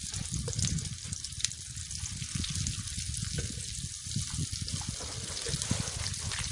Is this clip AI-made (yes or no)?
yes